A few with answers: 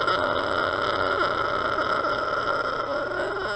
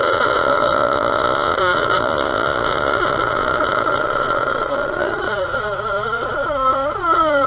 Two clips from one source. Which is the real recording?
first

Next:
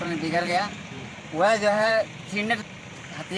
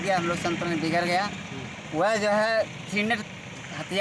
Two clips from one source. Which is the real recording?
second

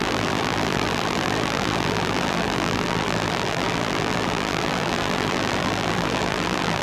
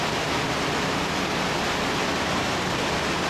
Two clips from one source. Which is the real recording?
second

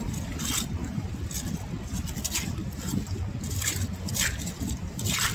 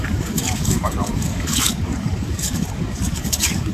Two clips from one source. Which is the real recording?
first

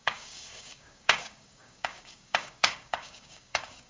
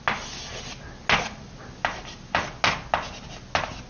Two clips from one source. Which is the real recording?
second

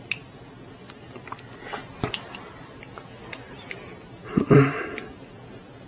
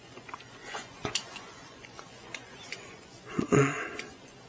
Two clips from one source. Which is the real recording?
first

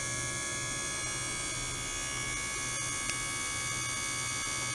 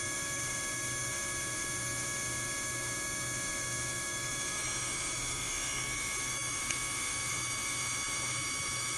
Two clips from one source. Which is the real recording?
first